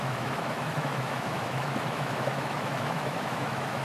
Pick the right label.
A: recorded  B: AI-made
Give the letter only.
B